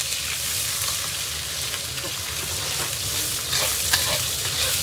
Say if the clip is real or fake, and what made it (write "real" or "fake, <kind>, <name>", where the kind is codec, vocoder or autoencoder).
real